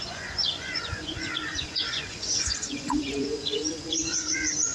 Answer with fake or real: fake